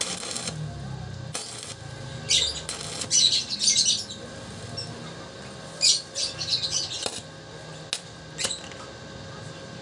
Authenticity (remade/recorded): recorded